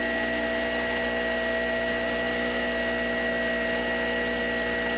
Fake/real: real